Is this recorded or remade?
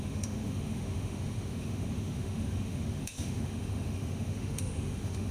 remade